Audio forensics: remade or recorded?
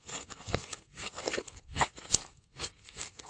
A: remade